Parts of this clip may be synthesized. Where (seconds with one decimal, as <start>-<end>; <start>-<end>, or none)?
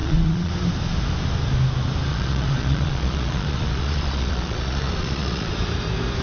0.0-0.5; 2.1-5.5